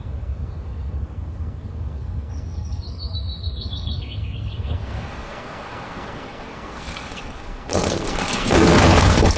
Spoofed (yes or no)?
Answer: yes